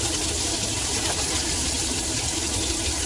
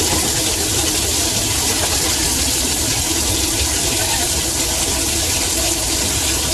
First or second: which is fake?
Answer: second